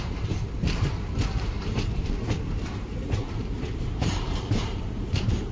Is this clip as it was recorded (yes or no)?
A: no